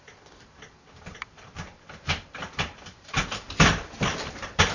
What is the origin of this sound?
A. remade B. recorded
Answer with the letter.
A